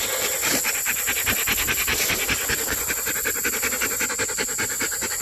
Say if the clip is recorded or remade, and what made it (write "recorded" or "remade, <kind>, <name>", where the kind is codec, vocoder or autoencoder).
recorded